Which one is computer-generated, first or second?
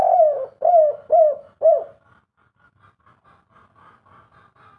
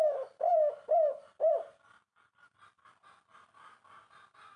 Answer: second